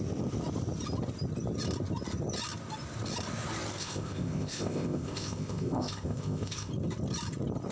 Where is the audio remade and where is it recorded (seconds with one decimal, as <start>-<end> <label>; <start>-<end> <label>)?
0.0-3.8 recorded; 3.8-6.7 remade; 6.7-7.7 recorded